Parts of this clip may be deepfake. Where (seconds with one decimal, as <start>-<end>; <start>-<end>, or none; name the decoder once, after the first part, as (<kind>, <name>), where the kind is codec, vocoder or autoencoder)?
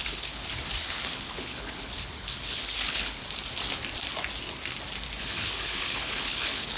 0.0-3.2 (codec, HILCodec); 5.2-6.8